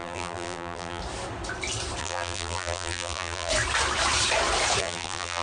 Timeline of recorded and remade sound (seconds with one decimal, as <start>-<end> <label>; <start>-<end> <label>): 0.0-1.0 remade; 1.0-2.0 recorded; 2.0-3.5 remade; 3.5-4.8 recorded; 4.8-5.4 remade